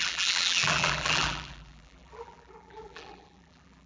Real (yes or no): no